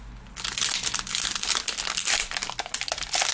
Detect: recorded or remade recorded